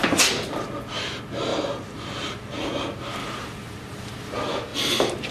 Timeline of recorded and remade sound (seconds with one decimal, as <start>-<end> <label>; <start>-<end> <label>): 0.0-1.5 recorded; 1.5-2.7 remade; 2.7-3.2 recorded; 3.2-4.1 remade; 4.1-5.3 recorded